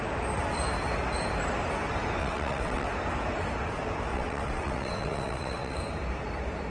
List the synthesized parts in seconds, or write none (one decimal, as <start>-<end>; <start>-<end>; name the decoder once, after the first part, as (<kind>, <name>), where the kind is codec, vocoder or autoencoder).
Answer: 2.2-2.9 (vocoder, WaveNeXt); 4.1-5.8